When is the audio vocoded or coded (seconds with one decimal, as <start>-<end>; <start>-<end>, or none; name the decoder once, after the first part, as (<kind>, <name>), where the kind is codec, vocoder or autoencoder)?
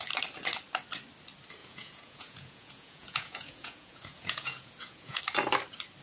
1.6-5.2 (vocoder, Vocos)